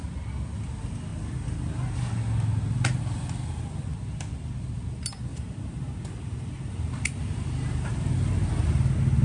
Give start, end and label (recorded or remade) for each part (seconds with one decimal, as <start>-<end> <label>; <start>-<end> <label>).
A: 0.0-5.3 recorded; 5.3-6.8 remade; 6.8-7.2 recorded; 7.2-7.9 remade; 7.9-9.2 recorded